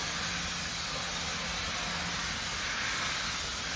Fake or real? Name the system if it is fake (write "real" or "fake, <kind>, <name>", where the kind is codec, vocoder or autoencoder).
real